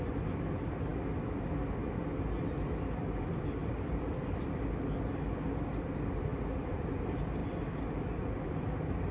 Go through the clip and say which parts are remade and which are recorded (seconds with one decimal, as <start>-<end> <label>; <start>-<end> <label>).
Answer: 0.0-3.6 recorded; 3.6-4.8 remade; 4.8-6.3 recorded; 6.3-7.0 remade; 7.0-7.4 recorded; 7.4-9.1 remade